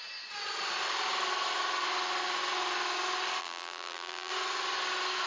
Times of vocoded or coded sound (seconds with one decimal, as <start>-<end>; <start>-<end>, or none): 3.4-4.3